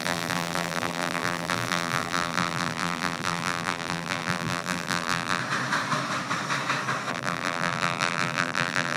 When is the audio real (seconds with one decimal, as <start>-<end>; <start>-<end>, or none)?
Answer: 5.4-7.1